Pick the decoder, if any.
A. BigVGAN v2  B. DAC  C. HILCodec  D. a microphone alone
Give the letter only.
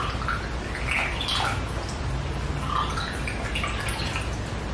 D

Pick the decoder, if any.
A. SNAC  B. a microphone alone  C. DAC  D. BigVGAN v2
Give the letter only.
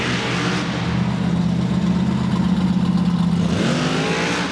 B